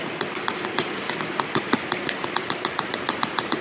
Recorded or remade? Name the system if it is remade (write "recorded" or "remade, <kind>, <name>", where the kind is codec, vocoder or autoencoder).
recorded